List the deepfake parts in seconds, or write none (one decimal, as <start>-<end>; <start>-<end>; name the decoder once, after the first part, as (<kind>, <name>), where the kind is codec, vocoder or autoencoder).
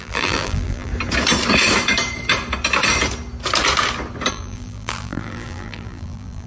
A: 0.0-0.9 (vocoder, BigVGAN v2); 4.3-6.5